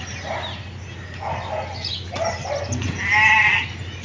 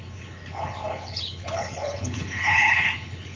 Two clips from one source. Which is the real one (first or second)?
first